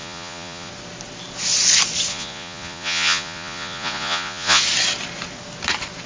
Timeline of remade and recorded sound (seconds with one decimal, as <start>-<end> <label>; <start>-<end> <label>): 0.0-0.7 remade; 0.7-2.1 recorded; 2.1-4.6 remade; 4.6-6.1 recorded